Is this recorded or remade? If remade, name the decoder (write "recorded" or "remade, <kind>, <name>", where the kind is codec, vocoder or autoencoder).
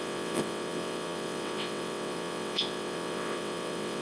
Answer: remade, vocoder, WaveNeXt